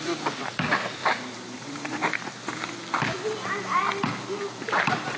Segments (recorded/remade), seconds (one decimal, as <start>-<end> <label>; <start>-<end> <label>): 0.0-1.0 recorded; 1.0-2.3 remade; 2.3-5.2 recorded